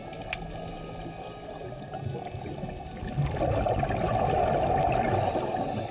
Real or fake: real